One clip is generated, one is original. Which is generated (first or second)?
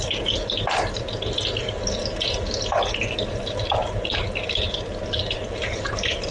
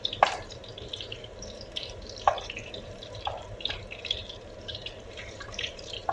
second